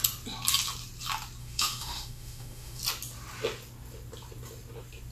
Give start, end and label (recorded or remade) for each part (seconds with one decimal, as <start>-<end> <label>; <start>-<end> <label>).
0.0-1.4 recorded; 1.4-2.8 remade; 2.8-5.1 recorded